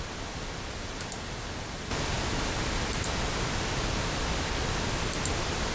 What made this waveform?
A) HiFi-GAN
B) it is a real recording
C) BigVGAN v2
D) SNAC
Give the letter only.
B